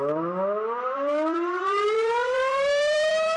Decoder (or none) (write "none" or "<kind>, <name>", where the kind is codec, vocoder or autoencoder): vocoder, BigVGAN v2